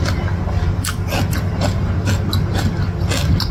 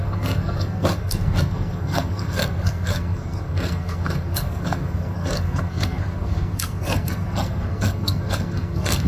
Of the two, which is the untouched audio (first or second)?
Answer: first